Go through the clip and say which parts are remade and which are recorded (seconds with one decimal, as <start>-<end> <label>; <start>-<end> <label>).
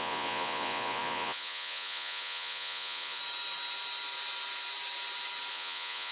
0.0-3.2 remade; 3.2-5.5 recorded; 5.5-6.1 remade